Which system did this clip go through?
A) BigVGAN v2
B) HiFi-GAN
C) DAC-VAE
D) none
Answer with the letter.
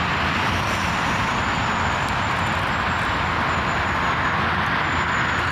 D